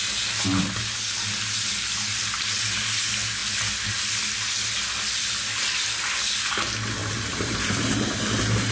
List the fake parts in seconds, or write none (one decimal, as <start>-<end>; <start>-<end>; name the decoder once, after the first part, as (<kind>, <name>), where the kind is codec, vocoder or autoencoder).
7.0-8.2 (vocoder, BigVGAN v2)